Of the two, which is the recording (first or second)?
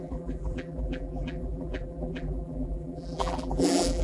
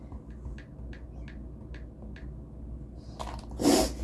second